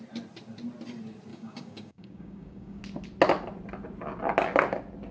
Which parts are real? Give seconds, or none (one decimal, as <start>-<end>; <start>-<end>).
0.0-1.3; 2.8-5.1